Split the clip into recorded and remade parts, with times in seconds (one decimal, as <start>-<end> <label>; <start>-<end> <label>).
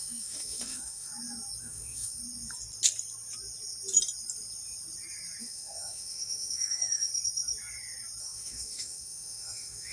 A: 0.0-1.1 remade; 1.1-1.6 recorded; 1.6-2.2 remade; 2.2-5.4 recorded; 5.4-7.1 remade; 7.1-8.2 recorded; 8.2-9.9 remade